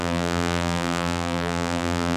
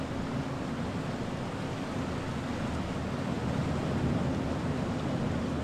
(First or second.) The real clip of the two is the second